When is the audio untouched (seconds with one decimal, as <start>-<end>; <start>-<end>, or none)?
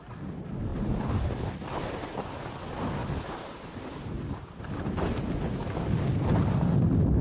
0.0-0.7; 1.3-3.0; 4.9-7.2